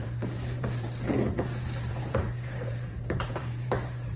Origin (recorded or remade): remade